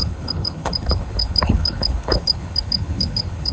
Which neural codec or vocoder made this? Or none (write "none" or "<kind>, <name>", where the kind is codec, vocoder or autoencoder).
codec, HILCodec